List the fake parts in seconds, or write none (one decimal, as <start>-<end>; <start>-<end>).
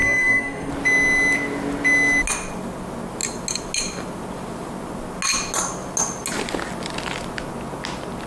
0.0-0.7